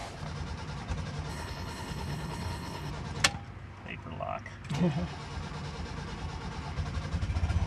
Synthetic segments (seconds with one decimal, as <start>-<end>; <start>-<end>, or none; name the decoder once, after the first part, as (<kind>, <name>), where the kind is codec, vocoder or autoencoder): 1.3-2.9 (codec, HILCodec)

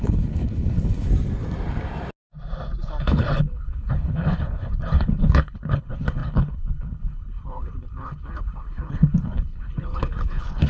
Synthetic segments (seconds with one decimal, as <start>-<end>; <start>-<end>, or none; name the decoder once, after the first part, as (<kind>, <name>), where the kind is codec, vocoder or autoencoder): 0.0-1.1 (codec, HILCodec); 3.0-10.7

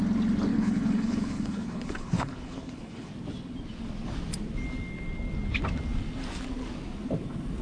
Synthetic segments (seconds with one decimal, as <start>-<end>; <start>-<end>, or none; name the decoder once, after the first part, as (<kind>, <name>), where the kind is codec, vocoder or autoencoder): 0.5-3.1 (codec, HILCodec)

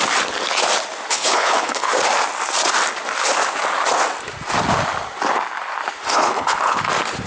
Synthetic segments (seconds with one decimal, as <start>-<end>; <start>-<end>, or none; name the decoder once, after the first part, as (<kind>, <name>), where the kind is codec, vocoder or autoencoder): 1.1-1.9 (codec, HILCodec); 6.1-6.8